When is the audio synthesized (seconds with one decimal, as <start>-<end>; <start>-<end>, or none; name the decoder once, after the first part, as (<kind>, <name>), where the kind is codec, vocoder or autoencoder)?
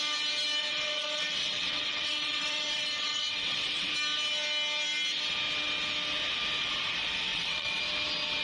0.6-3.9 (vocoder, WaveNeXt); 7.3-7.8